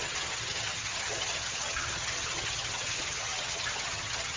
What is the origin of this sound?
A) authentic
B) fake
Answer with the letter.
B